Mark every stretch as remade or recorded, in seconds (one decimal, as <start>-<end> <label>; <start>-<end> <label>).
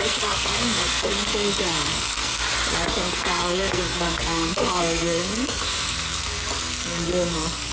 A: 0.0-2.4 remade; 2.4-2.9 recorded; 2.9-7.7 remade